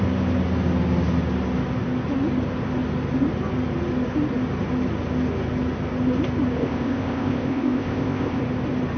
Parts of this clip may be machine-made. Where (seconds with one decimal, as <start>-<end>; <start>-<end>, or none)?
6.6-8.4